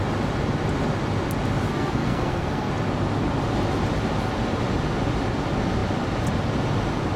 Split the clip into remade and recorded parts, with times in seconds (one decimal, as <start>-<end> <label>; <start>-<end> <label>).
0.0-1.7 recorded; 1.7-2.7 remade; 2.7-7.2 recorded